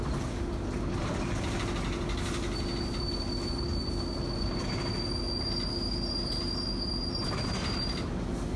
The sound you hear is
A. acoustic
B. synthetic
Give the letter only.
A